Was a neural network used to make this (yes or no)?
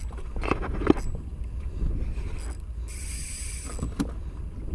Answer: no